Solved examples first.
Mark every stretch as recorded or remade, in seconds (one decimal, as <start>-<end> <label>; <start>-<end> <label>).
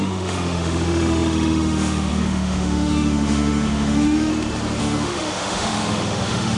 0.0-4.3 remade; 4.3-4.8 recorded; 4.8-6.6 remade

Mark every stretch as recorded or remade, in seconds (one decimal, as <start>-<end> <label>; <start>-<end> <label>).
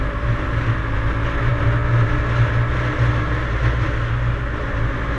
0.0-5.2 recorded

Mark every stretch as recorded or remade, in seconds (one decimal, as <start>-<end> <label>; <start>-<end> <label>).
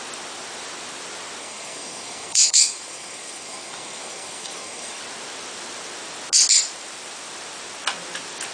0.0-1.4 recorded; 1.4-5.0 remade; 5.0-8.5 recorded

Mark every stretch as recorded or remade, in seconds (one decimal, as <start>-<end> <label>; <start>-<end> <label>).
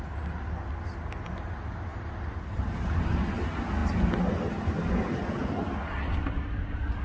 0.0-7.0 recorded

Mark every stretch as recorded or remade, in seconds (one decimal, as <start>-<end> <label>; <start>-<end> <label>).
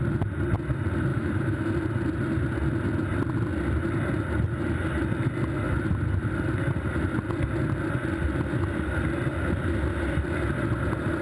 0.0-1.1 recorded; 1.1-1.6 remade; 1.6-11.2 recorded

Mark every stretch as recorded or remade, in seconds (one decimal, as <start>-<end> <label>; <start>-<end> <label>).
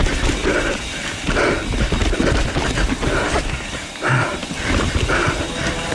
0.0-0.4 remade; 0.4-0.9 recorded; 0.9-2.0 remade; 2.0-3.9 recorded; 3.9-5.9 remade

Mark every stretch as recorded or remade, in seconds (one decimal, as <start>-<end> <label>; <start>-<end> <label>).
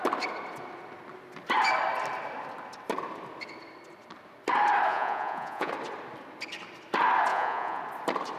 0.0-4.9 recorded; 4.9-5.7 remade; 5.7-7.3 recorded; 7.3-7.8 remade; 7.8-8.4 recorded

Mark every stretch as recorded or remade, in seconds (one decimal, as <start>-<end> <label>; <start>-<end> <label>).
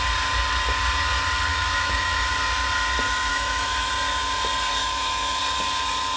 0.0-1.5 recorded; 1.5-2.2 remade; 2.2-3.3 recorded; 3.3-3.9 remade; 3.9-4.8 recorded; 4.8-5.4 remade; 5.4-6.2 recorded